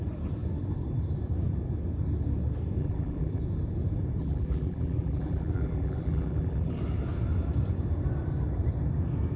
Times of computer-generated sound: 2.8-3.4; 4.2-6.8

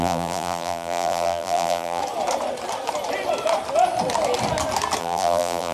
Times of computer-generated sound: 0.0-2.0; 5.0-5.7

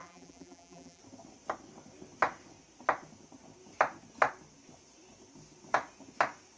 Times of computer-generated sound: 0.0-1.0

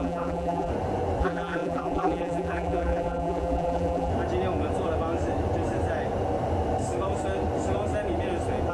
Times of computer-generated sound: 0.0-0.7; 1.2-4.1